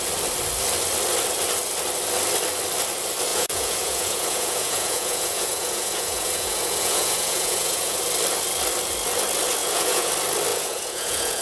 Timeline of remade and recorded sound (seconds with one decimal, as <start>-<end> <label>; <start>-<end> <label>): 0.0-3.3 recorded; 3.3-8.0 remade; 8.0-9.6 recorded; 9.6-10.1 remade; 10.1-10.5 recorded; 10.5-11.4 remade